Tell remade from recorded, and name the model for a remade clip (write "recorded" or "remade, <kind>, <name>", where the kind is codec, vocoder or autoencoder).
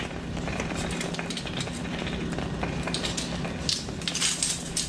recorded